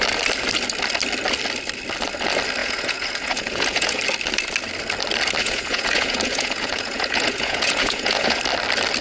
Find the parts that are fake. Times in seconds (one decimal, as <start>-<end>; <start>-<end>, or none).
2.6-4.0; 5.4-8.4